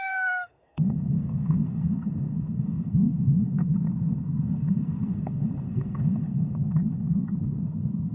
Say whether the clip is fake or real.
fake